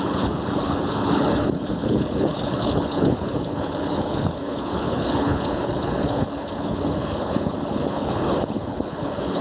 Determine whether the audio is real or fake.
fake